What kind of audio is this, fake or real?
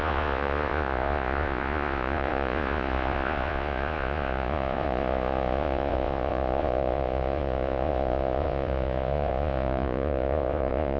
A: fake